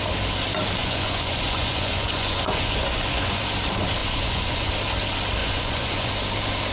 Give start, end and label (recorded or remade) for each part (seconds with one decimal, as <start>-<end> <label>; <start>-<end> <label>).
0.0-0.8 recorded; 0.8-3.4 remade; 3.4-4.0 recorded; 4.0-4.7 remade; 4.7-5.4 recorded; 5.4-6.1 remade; 6.1-6.7 recorded